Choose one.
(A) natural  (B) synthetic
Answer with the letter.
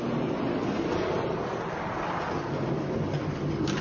A